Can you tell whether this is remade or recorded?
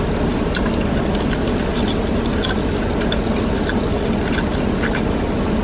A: recorded